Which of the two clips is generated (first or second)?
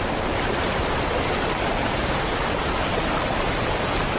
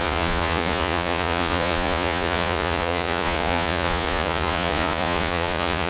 second